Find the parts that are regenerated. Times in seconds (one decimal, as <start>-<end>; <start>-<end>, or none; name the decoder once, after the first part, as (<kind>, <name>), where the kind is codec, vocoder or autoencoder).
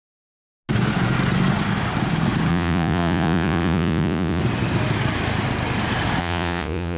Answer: 2.5-4.4 (vocoder, Vocos); 6.2-7.0